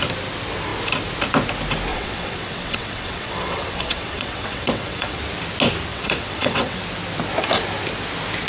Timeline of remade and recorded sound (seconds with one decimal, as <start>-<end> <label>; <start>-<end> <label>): 0.0-1.9 recorded; 1.9-5.2 remade; 5.2-5.9 recorded; 5.9-6.8 remade; 6.8-8.5 recorded